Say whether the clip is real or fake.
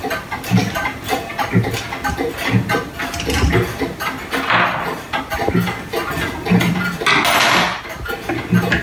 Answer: real